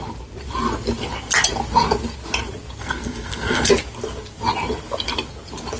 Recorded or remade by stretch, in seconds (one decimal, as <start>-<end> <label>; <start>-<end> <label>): 0.0-2.8 recorded; 2.8-3.7 remade; 3.7-5.8 recorded